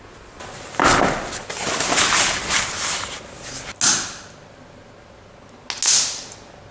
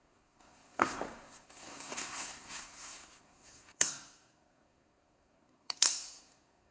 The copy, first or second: second